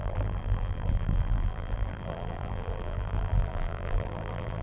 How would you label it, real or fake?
fake